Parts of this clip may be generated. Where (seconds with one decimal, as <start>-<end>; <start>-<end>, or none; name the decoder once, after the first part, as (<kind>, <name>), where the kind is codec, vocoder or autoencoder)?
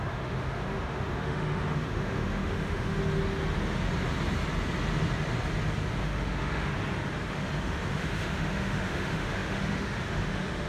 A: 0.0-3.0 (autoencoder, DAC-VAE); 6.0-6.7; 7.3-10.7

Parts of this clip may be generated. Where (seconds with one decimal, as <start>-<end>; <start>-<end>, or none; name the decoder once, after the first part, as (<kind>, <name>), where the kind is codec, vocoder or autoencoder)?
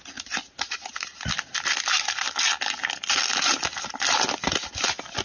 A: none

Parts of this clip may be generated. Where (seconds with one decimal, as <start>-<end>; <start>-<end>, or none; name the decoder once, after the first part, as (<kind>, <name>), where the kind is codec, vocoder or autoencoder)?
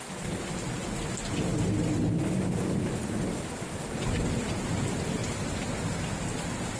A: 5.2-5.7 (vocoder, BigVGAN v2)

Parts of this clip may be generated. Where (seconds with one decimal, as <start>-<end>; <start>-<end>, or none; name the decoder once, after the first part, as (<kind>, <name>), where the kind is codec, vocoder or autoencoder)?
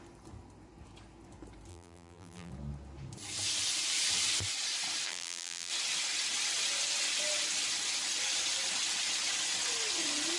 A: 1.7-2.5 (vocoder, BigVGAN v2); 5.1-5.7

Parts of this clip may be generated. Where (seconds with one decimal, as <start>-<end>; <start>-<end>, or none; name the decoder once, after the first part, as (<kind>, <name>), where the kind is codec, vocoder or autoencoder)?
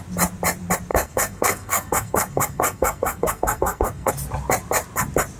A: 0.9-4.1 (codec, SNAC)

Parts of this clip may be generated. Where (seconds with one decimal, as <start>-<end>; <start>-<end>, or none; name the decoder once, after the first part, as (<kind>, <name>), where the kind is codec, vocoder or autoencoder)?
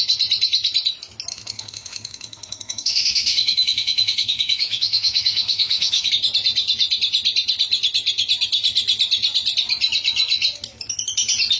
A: 1.3-6.1 (autoencoder, DAC-VAE)